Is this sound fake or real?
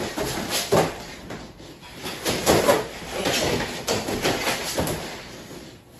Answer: real